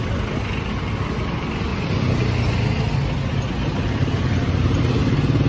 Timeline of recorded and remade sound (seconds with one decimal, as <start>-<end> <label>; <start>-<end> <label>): 0.0-5.5 recorded

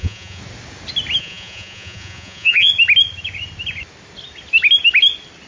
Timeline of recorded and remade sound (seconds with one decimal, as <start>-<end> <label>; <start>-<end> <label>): 0.0-0.4 remade; 0.4-1.2 recorded; 1.2-2.7 remade; 2.7-5.5 recorded